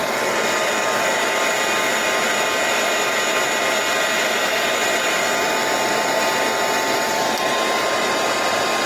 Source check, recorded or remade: recorded